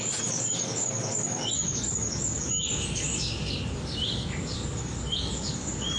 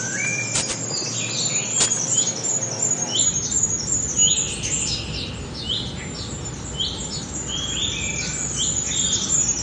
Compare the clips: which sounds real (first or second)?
second